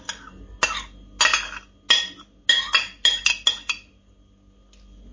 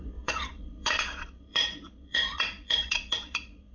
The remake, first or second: second